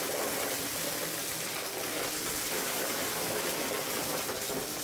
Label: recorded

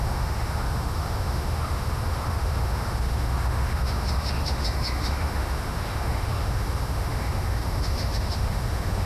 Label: remade